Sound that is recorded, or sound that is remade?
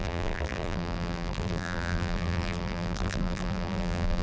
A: remade